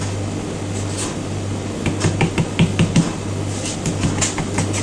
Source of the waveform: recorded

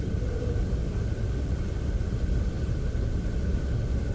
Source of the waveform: remade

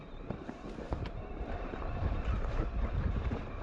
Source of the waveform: remade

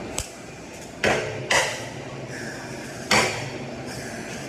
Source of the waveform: recorded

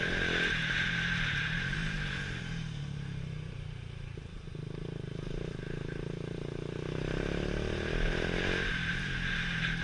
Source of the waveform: remade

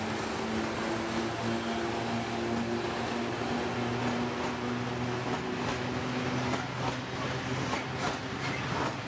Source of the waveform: recorded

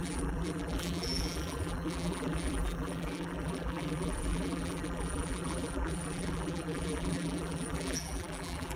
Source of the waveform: remade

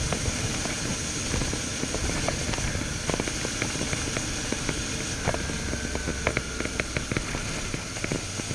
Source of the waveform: recorded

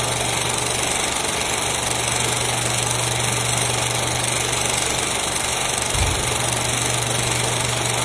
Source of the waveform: recorded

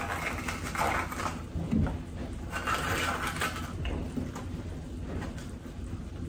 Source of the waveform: recorded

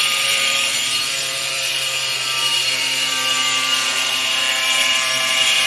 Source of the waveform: remade